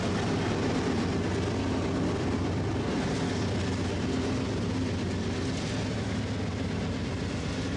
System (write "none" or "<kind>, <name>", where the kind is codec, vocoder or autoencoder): none